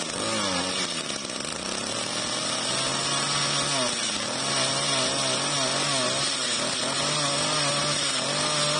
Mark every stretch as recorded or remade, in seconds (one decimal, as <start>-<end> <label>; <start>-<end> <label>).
0.0-8.8 recorded

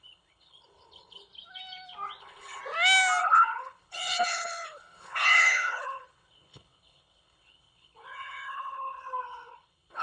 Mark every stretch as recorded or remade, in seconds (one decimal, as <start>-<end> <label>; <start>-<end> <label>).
0.0-1.3 remade; 1.3-2.2 recorded; 2.2-2.6 remade; 2.6-3.2 recorded; 3.2-10.0 remade

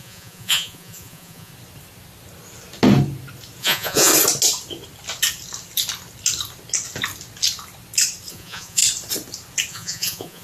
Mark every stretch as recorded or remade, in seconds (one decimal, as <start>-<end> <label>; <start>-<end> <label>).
0.0-1.5 remade; 1.5-3.6 recorded; 3.6-4.1 remade; 4.1-8.3 recorded; 8.3-8.8 remade; 8.8-9.7 recorded; 9.7-10.4 remade

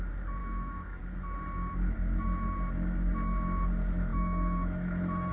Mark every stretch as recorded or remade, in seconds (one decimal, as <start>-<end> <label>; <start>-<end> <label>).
0.0-0.4 recorded; 0.4-1.0 remade; 1.0-4.1 recorded; 4.1-5.3 remade